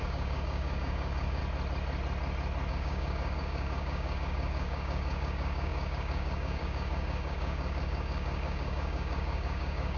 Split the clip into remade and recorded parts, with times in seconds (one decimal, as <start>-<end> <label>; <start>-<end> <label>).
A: 0.0-1.4 remade; 1.4-2.7 recorded; 2.7-10.0 remade